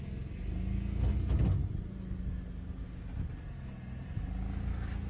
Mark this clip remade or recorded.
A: recorded